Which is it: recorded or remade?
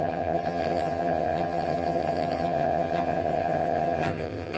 remade